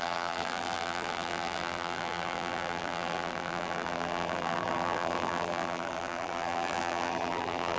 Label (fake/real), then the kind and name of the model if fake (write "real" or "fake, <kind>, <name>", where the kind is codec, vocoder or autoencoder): fake, vocoder, BigVGAN v2